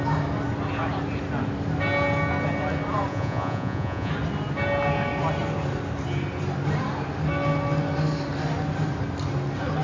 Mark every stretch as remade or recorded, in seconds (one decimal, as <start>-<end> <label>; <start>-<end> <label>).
0.0-3.1 recorded; 3.1-4.1 remade; 4.1-9.8 recorded

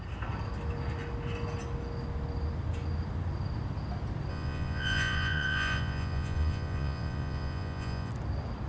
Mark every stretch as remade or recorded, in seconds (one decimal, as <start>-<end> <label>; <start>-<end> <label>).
0.0-4.3 recorded; 4.3-8.1 remade; 8.1-8.7 recorded

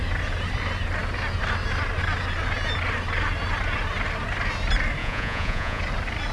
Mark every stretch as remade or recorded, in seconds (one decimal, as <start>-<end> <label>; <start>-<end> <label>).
0.0-5.0 recorded; 5.0-5.8 remade; 5.8-6.3 recorded

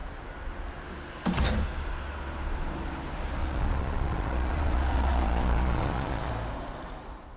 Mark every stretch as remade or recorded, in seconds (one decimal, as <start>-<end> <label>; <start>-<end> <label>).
0.0-3.4 recorded; 3.4-6.3 remade; 6.3-7.4 recorded

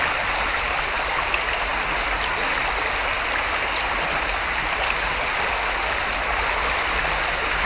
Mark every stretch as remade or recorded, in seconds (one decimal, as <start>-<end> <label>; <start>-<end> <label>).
0.0-7.7 recorded

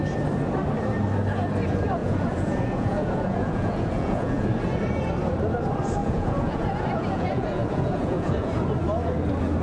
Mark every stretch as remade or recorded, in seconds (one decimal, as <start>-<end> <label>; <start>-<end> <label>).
0.0-2.0 recorded; 2.0-4.4 remade; 4.4-6.0 recorded; 6.0-8.5 remade; 8.5-9.6 recorded

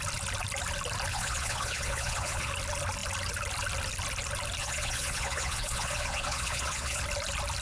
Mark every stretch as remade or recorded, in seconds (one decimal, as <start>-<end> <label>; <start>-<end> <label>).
0.0-1.1 recorded; 1.1-2.5 remade; 2.5-4.6 recorded; 4.6-7.0 remade; 7.0-7.6 recorded

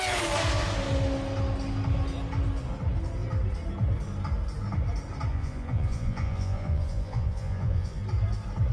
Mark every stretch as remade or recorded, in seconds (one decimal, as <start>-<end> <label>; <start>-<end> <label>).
0.0-5.3 recorded; 5.3-8.0 remade; 8.0-8.7 recorded